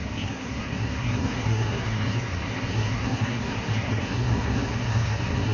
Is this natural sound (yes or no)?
no